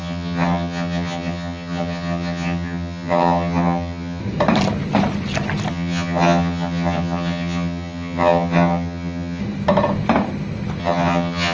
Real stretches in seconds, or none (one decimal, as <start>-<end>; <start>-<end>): 4.2-5.7; 9.4-10.8

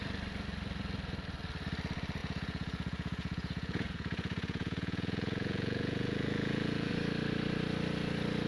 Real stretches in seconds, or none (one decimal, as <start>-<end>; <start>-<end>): 0.0-2.2; 6.9-8.5